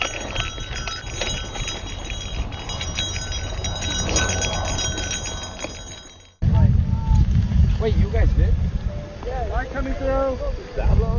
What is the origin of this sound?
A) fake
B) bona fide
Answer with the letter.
B